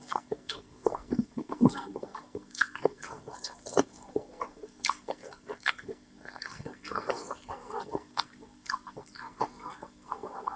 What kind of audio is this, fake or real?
fake